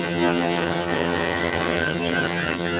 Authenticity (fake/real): fake